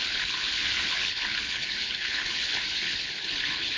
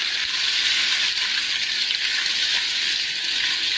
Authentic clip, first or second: second